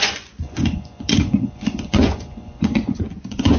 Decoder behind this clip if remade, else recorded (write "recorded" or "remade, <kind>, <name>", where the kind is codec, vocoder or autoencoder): remade, vocoder, Vocos